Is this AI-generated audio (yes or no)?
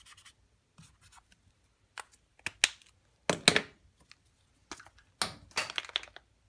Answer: no